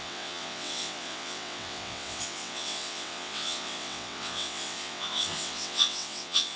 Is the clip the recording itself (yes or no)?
no